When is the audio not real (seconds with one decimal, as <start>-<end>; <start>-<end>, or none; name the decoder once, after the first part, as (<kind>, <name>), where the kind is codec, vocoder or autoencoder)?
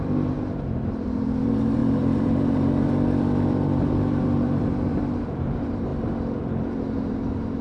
0.0-5.9 (vocoder, BigVGAN v2); 7.1-7.6